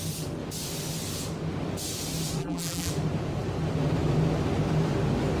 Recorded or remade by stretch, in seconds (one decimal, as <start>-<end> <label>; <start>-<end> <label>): 0.0-2.4 recorded; 2.4-2.9 remade; 2.9-5.4 recorded